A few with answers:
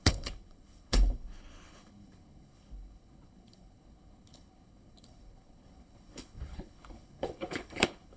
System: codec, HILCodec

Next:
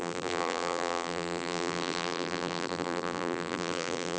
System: vocoder, BigVGAN v2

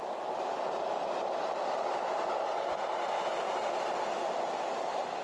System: none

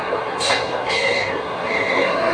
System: codec, SNAC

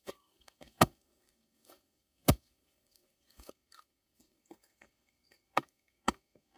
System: codec, SNAC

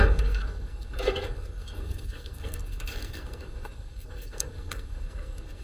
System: codec, SNAC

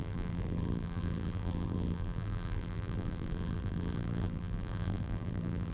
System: vocoder, BigVGAN v2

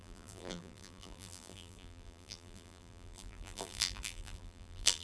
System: vocoder, BigVGAN v2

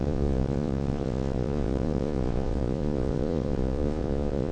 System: vocoder, Vocos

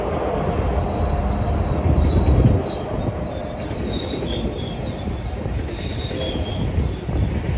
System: none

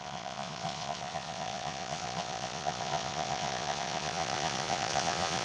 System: vocoder, Vocos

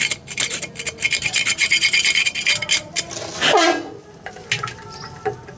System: none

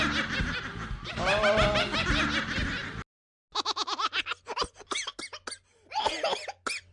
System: none